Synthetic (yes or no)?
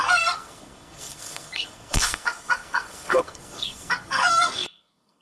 yes